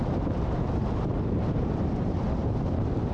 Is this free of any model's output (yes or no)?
no